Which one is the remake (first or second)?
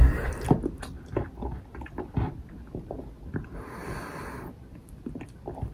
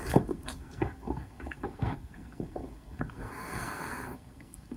second